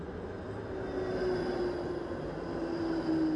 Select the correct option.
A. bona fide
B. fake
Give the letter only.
A